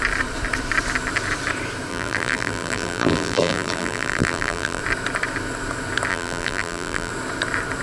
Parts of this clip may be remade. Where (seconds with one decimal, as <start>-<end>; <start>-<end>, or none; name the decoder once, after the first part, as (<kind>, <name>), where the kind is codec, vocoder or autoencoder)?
1.9-4.8 (vocoder, BigVGAN v2); 6.1-7.1